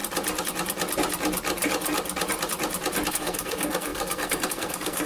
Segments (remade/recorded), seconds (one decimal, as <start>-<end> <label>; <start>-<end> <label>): 0.0-3.1 recorded; 3.1-5.1 remade